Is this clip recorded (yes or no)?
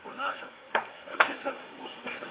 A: no